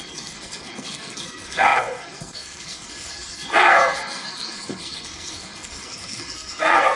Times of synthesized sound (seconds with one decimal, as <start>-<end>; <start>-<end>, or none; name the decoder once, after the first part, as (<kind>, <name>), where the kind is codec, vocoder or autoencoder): 0.0-7.0 (codec, SNAC)